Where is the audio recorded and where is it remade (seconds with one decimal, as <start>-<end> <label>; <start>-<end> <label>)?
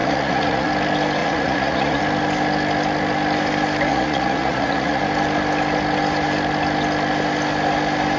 0.0-0.7 remade; 0.7-1.2 recorded; 1.2-2.0 remade; 2.0-3.9 recorded; 3.9-5.0 remade; 5.0-8.2 recorded